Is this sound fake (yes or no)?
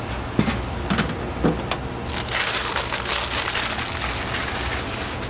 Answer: no